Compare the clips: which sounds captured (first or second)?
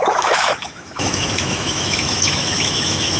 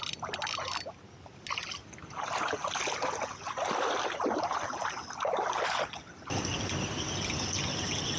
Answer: second